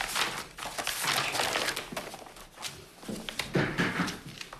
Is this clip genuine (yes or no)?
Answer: yes